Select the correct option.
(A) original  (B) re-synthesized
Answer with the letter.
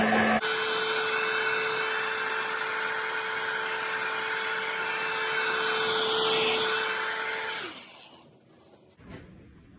A